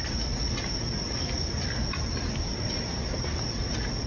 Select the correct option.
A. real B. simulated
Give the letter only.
A